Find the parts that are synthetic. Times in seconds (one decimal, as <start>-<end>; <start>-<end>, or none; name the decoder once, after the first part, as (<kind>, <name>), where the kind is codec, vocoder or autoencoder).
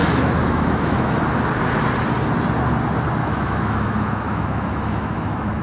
0.0-1.2 (autoencoder, DAC-VAE); 3.2-5.6